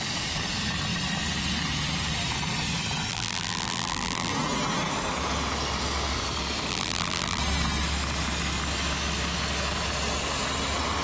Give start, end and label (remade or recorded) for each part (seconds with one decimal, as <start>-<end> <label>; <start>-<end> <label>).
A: 0.0-3.1 recorded; 3.1-4.3 remade; 4.3-6.7 recorded; 6.7-7.4 remade; 7.4-11.0 recorded